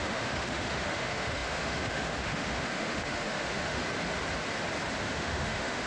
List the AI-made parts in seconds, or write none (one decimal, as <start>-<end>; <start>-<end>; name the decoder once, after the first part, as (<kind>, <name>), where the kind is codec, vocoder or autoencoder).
0.0-3.8 (autoencoder, DAC-VAE); 5.0-5.9